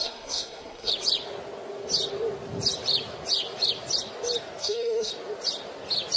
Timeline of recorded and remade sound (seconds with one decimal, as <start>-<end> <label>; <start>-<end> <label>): 0.0-0.9 remade; 0.9-4.6 recorded; 4.6-5.1 remade; 5.1-6.2 recorded